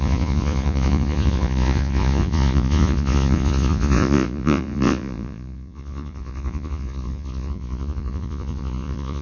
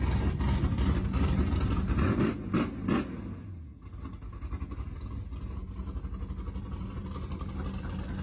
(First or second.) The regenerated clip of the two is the first